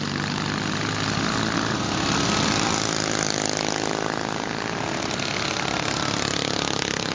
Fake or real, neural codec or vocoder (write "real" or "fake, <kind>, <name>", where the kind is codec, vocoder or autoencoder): real